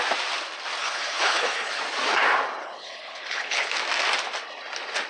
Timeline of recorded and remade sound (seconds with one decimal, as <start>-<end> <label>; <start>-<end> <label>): 0.0-0.8 recorded; 0.8-1.8 remade; 1.8-2.6 recorded; 2.6-3.7 remade; 3.7-5.1 recorded